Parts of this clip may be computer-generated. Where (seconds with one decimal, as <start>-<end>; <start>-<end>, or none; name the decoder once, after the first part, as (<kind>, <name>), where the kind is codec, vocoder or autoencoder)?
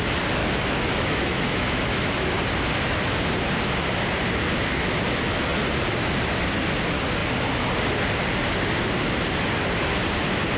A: 0.4-2.0 (autoencoder, DAC-VAE)